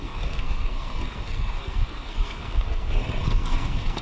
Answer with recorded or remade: remade